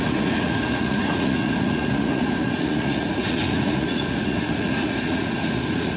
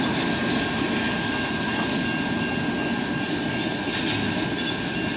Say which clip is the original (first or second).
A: second